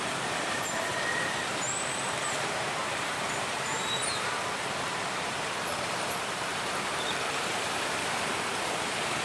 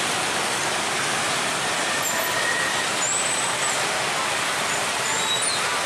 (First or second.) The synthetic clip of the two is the first